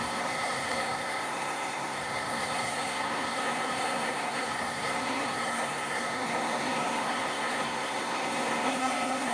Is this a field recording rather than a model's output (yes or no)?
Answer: no